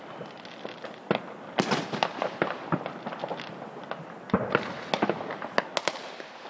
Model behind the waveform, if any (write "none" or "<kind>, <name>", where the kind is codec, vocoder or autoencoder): none